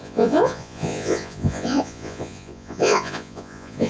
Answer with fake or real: fake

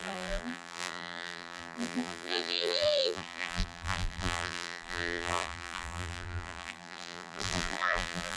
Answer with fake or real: fake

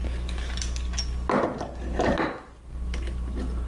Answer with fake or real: real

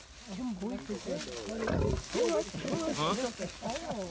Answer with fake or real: real